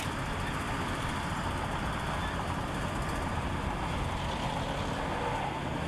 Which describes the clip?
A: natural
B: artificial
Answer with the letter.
A